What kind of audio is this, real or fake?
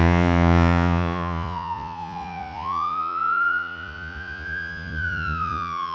fake